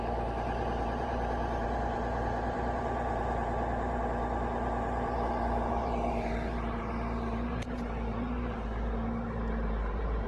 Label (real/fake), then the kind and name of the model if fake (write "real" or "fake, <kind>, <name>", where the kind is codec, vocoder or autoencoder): fake, vocoder, BigVGAN v2